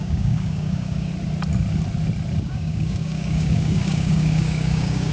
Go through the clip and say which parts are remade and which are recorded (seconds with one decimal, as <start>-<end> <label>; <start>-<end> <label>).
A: 0.0-1.1 remade; 1.1-2.4 recorded; 2.4-5.1 remade